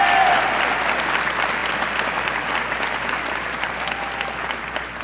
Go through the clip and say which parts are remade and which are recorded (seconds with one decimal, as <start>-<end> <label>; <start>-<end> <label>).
0.0-5.0 recorded